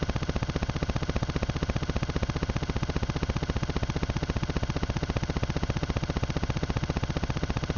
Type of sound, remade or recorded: remade